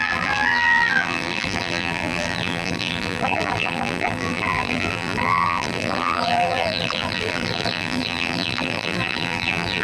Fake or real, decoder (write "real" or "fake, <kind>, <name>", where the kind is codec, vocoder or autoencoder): fake, vocoder, BigVGAN v2